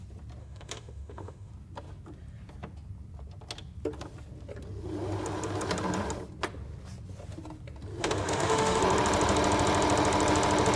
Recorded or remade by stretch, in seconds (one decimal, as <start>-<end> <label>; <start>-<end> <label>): 0.0-0.4 recorded; 0.4-1.5 remade; 1.5-8.0 recorded; 8.0-8.8 remade; 8.8-10.8 recorded